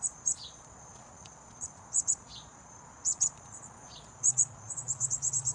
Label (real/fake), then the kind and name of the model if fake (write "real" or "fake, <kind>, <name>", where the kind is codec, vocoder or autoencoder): fake, vocoder, Vocos